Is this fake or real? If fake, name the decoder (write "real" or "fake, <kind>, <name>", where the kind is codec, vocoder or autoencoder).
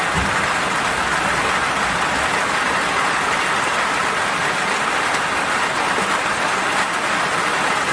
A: real